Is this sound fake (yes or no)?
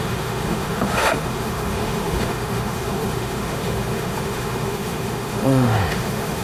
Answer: yes